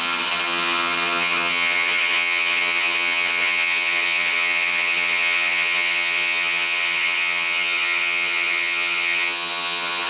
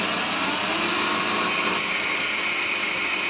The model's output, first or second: first